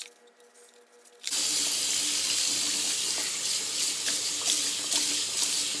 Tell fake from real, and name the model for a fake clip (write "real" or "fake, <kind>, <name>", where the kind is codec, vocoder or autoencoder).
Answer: real